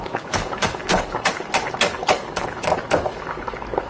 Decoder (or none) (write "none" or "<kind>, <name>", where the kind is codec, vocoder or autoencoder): codec, DAC